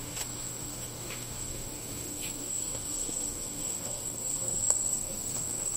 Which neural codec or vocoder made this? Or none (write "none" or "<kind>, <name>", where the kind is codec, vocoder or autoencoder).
codec, DAC